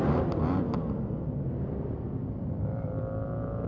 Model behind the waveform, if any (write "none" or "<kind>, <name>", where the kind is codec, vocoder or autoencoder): none